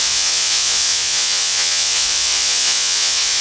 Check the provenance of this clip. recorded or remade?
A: remade